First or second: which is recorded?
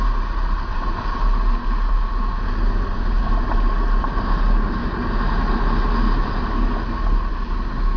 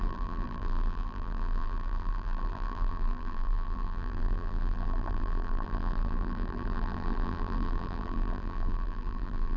first